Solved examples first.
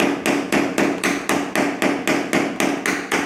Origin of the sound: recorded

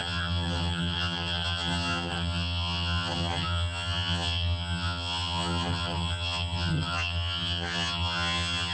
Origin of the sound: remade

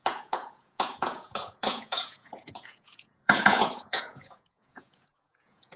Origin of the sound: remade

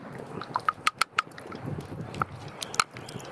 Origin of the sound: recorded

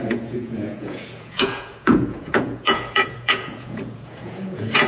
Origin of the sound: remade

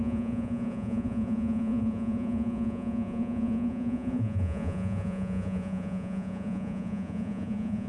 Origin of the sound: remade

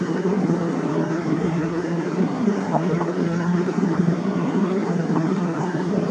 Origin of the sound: remade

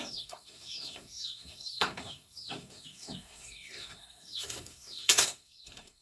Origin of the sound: remade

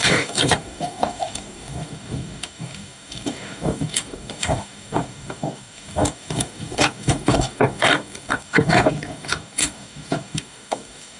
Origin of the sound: remade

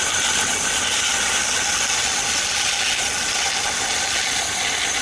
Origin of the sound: recorded